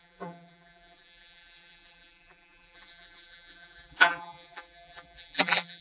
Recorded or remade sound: remade